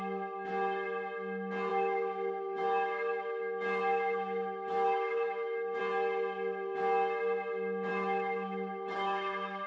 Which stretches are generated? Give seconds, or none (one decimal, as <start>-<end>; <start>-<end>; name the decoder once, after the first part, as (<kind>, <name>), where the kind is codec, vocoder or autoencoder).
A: 1.7-5.8 (autoencoder, DAC-VAE); 7.9-9.7